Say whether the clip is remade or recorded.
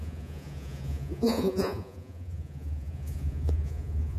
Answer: remade